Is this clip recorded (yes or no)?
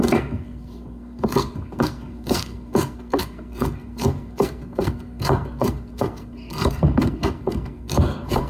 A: no